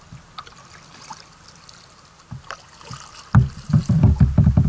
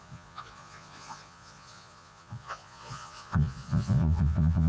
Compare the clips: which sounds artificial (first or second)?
second